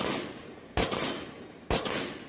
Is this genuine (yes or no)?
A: yes